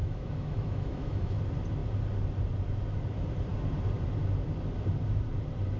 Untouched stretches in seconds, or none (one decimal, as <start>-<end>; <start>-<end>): 1.4-5.8